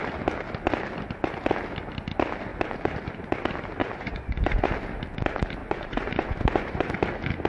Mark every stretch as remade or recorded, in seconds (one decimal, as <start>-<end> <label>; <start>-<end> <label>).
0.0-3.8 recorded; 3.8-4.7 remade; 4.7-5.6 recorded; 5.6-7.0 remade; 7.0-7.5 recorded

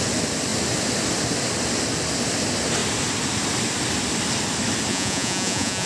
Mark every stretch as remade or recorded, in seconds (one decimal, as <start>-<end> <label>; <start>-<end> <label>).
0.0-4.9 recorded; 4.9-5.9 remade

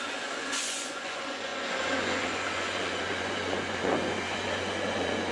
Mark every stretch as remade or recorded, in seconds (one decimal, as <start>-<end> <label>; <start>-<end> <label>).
0.0-5.3 remade

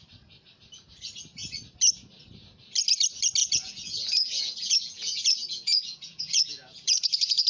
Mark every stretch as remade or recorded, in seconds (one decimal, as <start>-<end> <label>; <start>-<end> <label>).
0.0-3.4 recorded; 3.4-7.5 remade

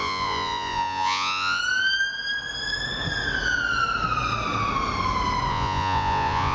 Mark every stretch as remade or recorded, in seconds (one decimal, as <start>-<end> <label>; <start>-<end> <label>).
0.0-1.6 remade; 1.6-5.5 recorded; 5.5-6.5 remade

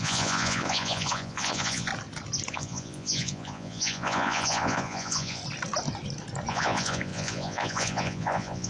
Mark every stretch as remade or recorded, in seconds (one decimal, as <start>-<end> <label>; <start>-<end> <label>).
0.0-1.9 remade; 1.9-2.5 recorded; 2.5-5.4 remade; 5.4-6.5 recorded; 6.5-8.7 remade

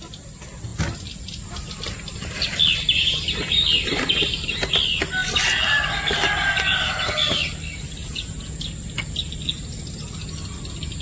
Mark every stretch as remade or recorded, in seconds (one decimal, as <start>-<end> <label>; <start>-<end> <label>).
0.0-8.0 recorded; 8.0-8.6 remade; 8.6-11.0 recorded